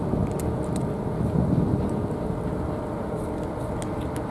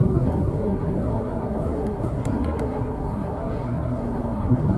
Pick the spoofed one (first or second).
second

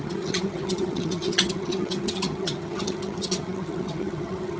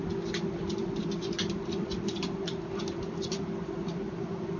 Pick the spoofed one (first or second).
first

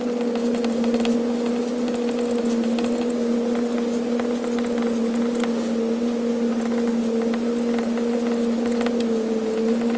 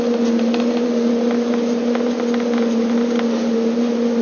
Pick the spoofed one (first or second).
second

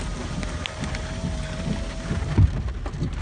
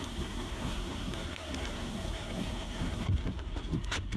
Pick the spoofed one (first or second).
second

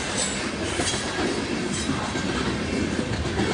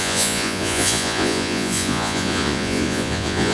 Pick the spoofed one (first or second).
second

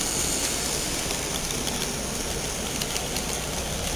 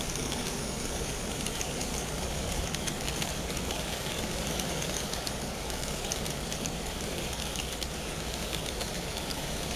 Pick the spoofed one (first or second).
second